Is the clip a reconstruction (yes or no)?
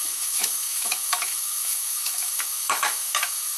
yes